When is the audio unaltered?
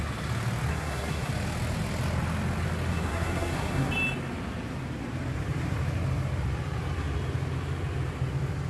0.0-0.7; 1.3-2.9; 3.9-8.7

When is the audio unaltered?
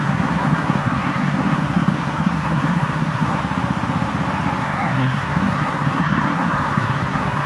3.4-4.6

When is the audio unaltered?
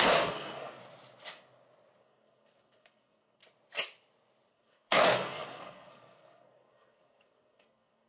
0.8-2.0; 3.4-4.5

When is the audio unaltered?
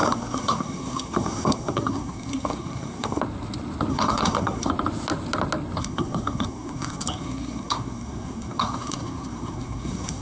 3.2-3.9; 4.7-5.8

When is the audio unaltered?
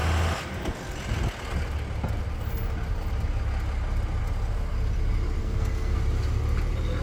0.0-5.4; 6.0-7.0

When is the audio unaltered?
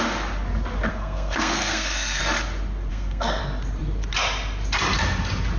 0.0-0.9; 2.2-2.9; 3.4-5.6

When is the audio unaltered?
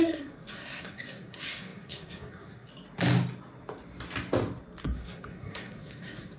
2.7-4.8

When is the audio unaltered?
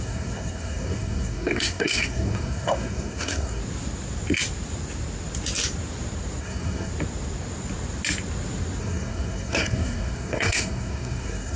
3.6-6.4; 6.9-8.8